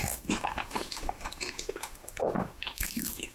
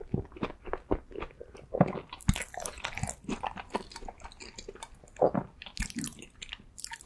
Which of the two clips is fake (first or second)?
first